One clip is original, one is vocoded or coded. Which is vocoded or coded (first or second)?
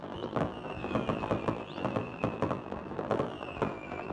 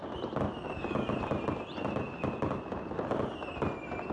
first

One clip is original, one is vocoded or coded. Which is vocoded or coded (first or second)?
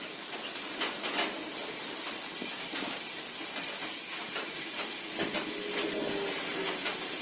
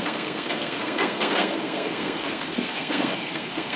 second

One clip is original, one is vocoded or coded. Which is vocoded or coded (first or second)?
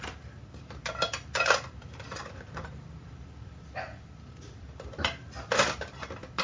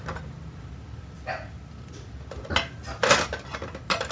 first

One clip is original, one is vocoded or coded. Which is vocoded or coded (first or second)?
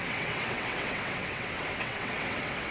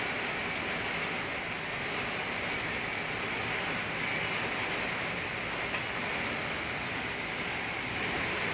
first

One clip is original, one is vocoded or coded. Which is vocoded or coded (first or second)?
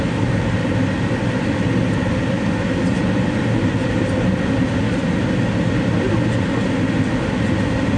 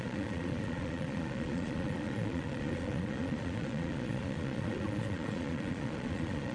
second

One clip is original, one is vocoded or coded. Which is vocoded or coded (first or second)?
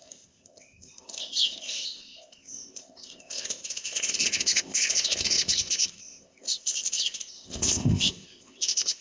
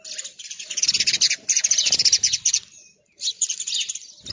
first